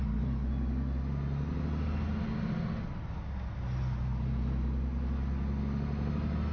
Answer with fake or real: real